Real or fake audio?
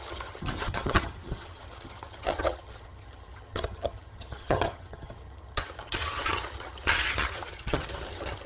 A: fake